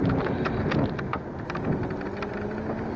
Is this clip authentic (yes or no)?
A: yes